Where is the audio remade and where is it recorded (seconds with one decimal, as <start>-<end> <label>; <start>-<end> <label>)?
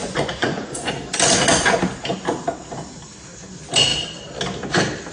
0.0-0.9 remade; 0.9-5.1 recorded